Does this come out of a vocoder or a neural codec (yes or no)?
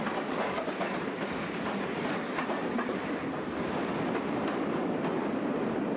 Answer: no